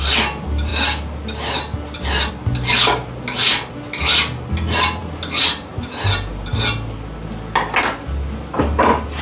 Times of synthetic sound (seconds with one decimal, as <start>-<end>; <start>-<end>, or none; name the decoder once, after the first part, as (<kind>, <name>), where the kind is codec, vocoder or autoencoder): none